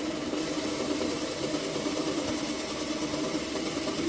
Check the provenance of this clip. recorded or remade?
recorded